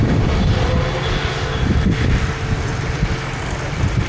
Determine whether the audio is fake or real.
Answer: real